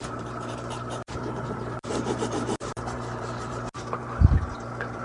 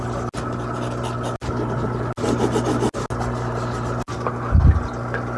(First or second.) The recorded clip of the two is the second